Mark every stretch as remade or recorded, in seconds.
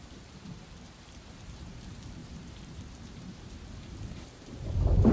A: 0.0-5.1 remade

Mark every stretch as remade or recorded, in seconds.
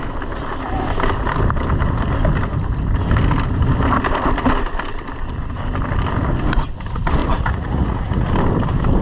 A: 0.0-7.2 recorded; 7.2-8.3 remade; 8.3-9.0 recorded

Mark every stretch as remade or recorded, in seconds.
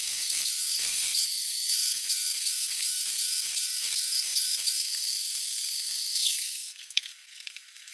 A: 0.0-7.9 remade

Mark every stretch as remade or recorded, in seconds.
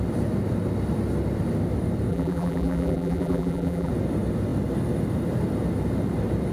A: 0.0-2.1 recorded; 2.1-3.9 remade; 3.9-6.5 recorded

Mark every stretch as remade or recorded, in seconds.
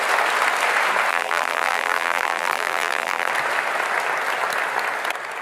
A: 0.0-1.1 recorded; 1.1-3.3 remade; 3.3-5.4 recorded